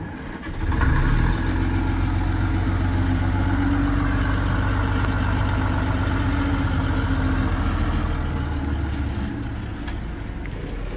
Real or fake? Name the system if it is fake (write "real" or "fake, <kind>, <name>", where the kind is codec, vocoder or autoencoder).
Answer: real